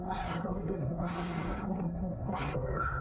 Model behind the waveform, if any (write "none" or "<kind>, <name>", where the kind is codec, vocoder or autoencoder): codec, SNAC